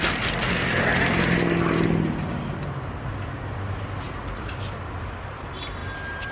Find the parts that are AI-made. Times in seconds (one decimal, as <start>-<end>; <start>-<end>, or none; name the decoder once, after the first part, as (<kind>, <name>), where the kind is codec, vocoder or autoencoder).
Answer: none